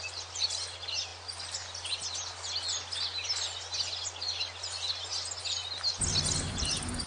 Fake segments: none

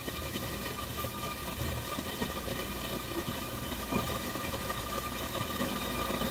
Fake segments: 0.0-1.4 (autoencoder, DAC-VAE); 3.2-6.3